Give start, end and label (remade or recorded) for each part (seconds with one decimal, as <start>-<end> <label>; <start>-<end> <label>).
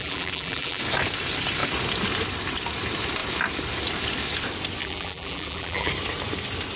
0.0-0.8 remade; 0.8-4.8 recorded; 4.8-5.9 remade; 5.9-6.8 recorded